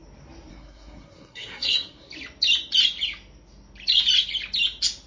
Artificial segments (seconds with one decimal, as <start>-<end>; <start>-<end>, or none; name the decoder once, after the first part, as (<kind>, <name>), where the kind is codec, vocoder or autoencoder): 0.5-2.1 (codec, SNAC)